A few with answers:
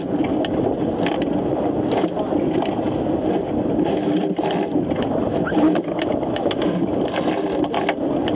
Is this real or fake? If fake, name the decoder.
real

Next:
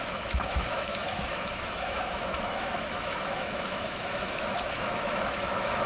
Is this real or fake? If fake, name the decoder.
fake, autoencoder, DAC-VAE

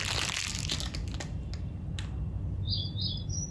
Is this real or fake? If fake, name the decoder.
real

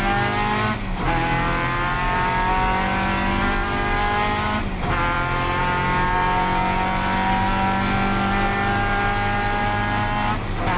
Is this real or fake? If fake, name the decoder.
real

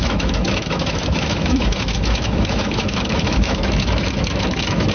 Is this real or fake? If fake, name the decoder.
fake, autoencoder, DAC-VAE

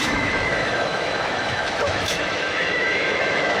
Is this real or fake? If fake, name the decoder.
fake, autoencoder, DAC-VAE